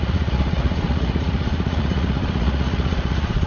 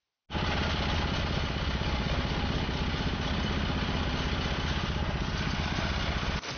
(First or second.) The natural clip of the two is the second